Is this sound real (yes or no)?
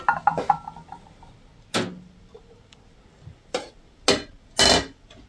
yes